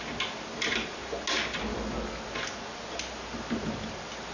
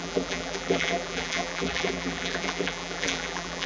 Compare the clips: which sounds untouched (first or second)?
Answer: first